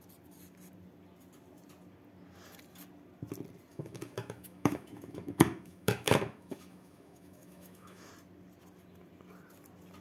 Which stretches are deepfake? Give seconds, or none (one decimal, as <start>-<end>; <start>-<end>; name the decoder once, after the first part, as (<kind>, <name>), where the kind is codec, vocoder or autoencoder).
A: 3.7-8.1 (autoencoder, DAC-VAE)